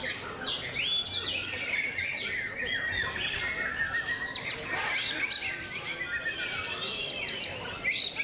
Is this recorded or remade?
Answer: recorded